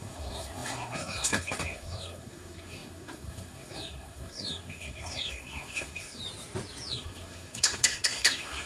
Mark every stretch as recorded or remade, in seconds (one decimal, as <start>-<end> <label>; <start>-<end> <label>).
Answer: 0.0-6.2 remade; 6.2-6.9 recorded; 6.9-8.7 remade